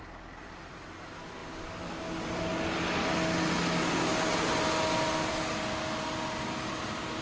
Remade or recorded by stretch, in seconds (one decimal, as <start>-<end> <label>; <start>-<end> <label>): 0.0-7.2 recorded